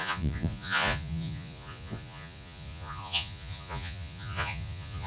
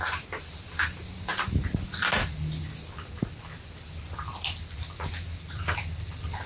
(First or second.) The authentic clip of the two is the second